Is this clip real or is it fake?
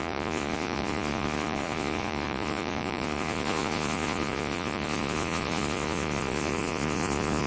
fake